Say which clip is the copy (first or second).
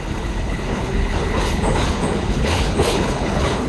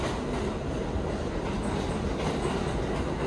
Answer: first